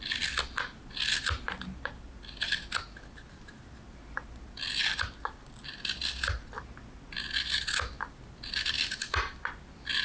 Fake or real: real